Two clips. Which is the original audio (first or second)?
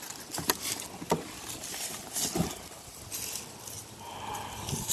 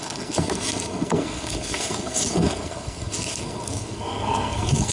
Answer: first